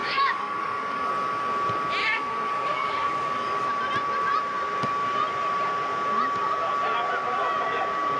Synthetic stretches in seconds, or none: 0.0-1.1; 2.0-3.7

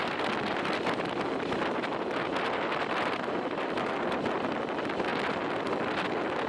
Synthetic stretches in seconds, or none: none

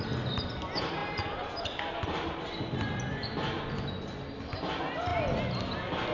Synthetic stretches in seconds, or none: none

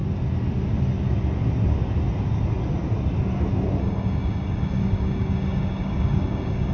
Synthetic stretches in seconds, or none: 3.8-6.7